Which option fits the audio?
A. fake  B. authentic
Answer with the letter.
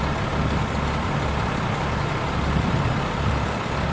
B